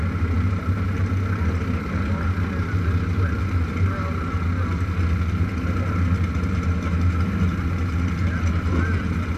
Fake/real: real